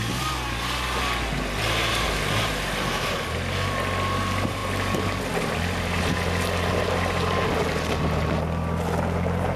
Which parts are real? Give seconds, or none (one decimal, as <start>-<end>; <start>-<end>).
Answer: 0.0-9.6